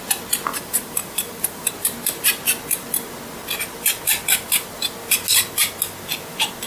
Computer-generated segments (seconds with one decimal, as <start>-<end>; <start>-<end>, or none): 0.5-1.7